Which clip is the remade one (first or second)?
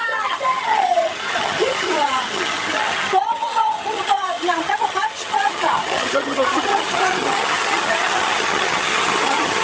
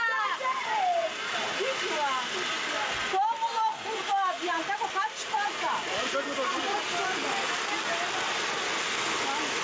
first